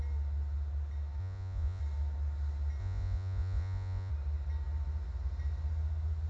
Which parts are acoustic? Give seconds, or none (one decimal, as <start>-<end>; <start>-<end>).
0.0-1.2; 1.8-2.8; 4.1-6.3